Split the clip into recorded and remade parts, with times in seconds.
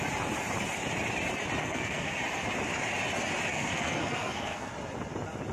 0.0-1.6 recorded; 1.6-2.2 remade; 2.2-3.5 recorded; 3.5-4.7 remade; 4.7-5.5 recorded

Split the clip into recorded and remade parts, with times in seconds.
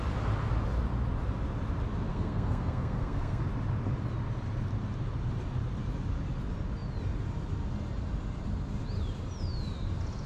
0.0-2.1 recorded; 2.1-3.4 remade; 3.4-10.3 recorded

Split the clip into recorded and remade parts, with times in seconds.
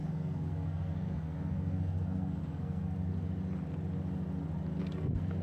0.0-3.1 remade; 3.1-4.8 recorded; 4.8-5.4 remade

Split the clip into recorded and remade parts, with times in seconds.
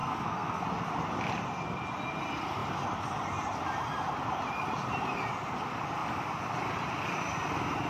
0.0-0.6 remade; 0.6-7.9 recorded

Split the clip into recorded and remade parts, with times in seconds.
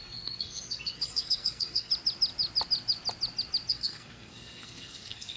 0.0-1.9 remade; 1.9-3.7 recorded; 3.7-5.4 remade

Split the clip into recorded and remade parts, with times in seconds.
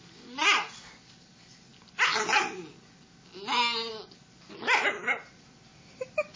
0.0-6.4 recorded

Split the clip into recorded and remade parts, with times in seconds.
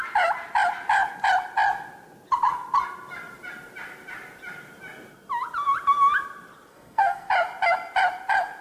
0.0-6.7 recorded; 6.7-7.3 remade; 7.3-8.6 recorded